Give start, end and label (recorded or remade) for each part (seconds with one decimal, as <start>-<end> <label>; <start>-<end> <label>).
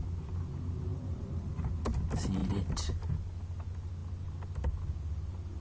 0.0-0.9 recorded; 0.9-1.5 remade; 1.5-2.4 recorded; 2.4-3.1 remade; 3.1-5.6 recorded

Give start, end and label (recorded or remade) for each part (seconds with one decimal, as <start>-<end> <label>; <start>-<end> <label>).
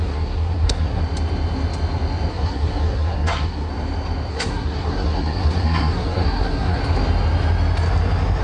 0.0-1.0 remade; 1.0-2.3 recorded; 2.3-3.7 remade; 3.7-4.3 recorded; 4.3-6.8 remade; 6.8-8.4 recorded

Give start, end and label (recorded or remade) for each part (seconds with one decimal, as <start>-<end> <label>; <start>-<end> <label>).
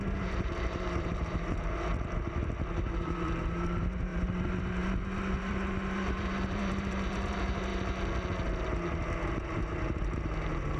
0.0-1.9 remade; 1.9-2.9 recorded; 2.9-7.7 remade; 7.7-9.3 recorded; 9.3-10.8 remade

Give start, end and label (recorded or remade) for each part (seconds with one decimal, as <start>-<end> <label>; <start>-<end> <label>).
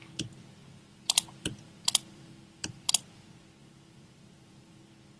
0.0-0.9 recorded; 0.9-2.9 remade; 2.9-3.6 recorded; 3.6-4.8 remade; 4.8-5.2 recorded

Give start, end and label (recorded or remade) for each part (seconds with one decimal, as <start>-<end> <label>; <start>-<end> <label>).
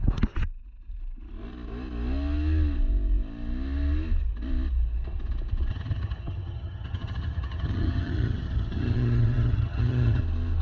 0.0-5.7 recorded; 5.7-10.2 remade; 10.2-10.6 recorded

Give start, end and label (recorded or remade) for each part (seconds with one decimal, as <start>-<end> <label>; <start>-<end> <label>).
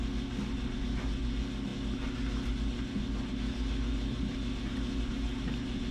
0.0-5.9 recorded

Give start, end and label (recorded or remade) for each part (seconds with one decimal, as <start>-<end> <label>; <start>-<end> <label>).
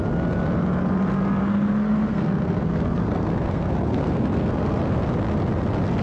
0.0-1.4 recorded; 1.4-5.0 remade; 5.0-6.0 recorded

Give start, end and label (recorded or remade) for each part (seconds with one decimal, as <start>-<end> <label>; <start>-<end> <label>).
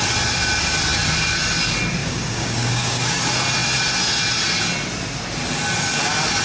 0.0-2.0 recorded; 2.0-3.2 remade; 3.2-6.4 recorded